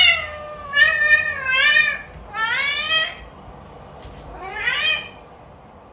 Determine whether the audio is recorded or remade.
recorded